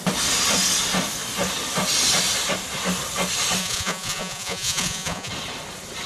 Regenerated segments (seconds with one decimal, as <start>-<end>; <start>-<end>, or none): 3.6-5.3